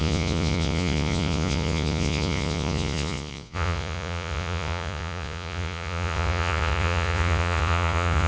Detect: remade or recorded remade